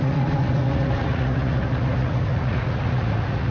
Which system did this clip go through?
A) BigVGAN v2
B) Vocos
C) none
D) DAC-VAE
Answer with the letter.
B